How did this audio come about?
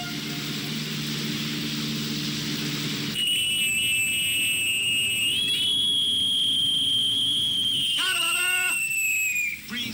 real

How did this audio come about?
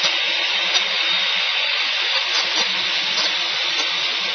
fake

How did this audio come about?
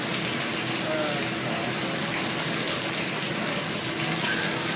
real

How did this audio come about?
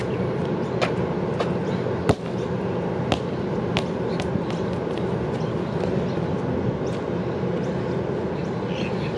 real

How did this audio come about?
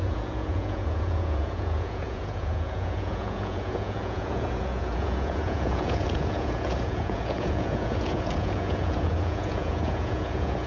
fake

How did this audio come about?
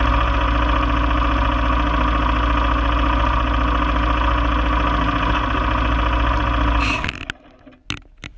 real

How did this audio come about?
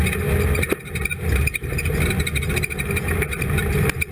real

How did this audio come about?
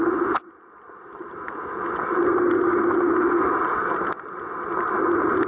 real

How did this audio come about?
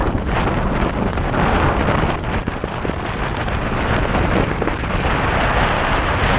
real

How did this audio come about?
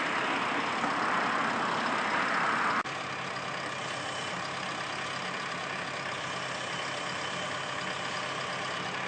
real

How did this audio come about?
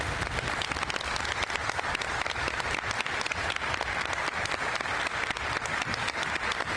real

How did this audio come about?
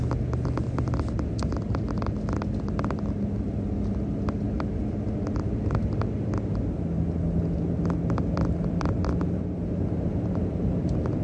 real